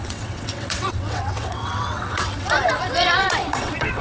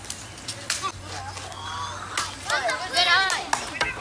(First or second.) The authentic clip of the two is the second